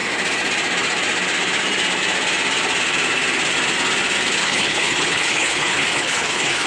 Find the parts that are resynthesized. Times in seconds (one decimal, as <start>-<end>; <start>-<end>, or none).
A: 4.4-6.7